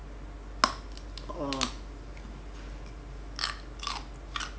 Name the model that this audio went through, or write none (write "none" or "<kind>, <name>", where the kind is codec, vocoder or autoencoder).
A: none